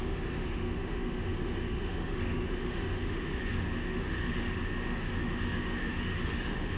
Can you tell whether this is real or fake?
fake